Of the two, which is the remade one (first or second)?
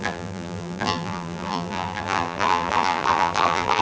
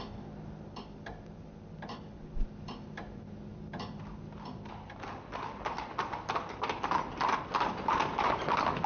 first